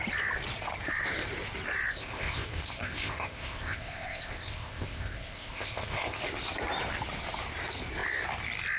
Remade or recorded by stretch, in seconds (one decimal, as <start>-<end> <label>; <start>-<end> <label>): 0.0-1.9 recorded; 1.9-6.2 remade; 6.2-8.8 recorded